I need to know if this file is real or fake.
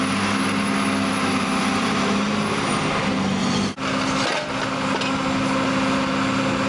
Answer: real